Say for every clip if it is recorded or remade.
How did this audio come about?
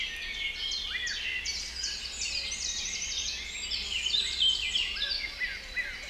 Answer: recorded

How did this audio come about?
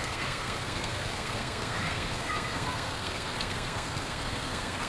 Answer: remade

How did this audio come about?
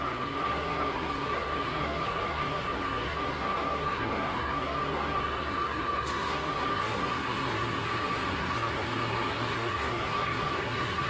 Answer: remade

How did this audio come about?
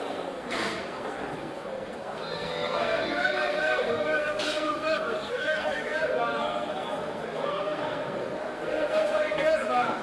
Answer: remade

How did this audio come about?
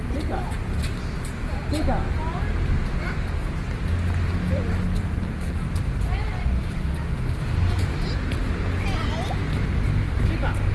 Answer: recorded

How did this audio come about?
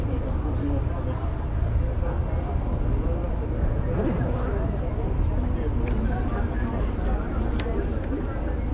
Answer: recorded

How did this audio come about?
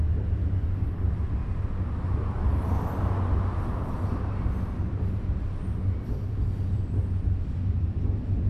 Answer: recorded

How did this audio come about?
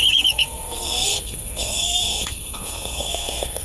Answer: remade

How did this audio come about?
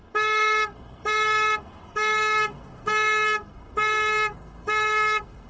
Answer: remade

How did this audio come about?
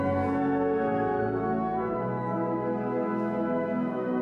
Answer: recorded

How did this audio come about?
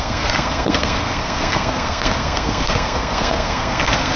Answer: remade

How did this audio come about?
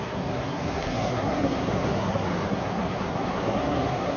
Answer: remade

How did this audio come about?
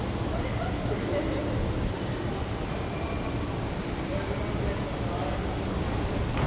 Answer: recorded